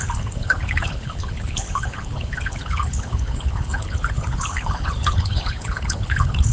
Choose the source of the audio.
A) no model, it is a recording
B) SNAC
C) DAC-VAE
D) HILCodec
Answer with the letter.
D